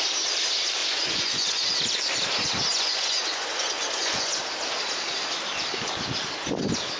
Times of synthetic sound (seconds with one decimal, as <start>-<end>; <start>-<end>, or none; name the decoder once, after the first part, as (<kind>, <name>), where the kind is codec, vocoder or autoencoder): 0.8-1.7 (vocoder, Vocos); 2.7-4.4